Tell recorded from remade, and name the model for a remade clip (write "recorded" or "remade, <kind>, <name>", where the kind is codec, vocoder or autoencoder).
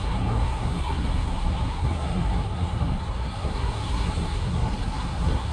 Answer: remade, codec, SNAC